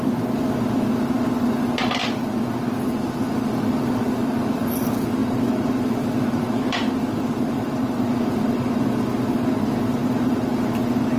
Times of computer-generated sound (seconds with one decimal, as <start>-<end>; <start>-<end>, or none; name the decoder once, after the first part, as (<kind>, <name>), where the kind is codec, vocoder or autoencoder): none